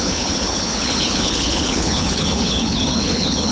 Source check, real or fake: fake